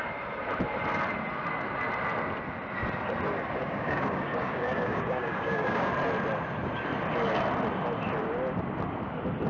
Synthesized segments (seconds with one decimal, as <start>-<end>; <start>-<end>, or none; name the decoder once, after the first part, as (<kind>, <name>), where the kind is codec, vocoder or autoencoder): 3.6-5.9 (codec, DAC)